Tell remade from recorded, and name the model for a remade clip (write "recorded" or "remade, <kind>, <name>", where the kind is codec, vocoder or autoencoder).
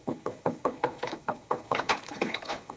remade, codec, HILCodec